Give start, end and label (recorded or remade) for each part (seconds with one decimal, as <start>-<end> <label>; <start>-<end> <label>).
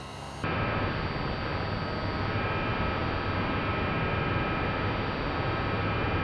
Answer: 0.0-6.2 recorded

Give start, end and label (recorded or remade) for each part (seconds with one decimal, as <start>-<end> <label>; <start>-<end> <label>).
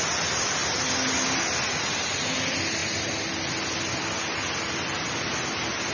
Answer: 0.0-5.9 recorded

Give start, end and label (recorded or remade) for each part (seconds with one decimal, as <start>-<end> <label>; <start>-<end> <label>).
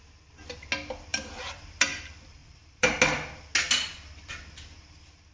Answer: 0.0-1.1 recorded; 1.1-2.0 remade; 2.0-2.4 recorded; 2.4-3.0 remade; 3.0-5.3 recorded